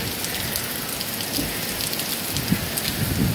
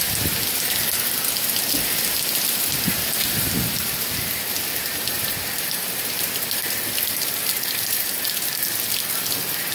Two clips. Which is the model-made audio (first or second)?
second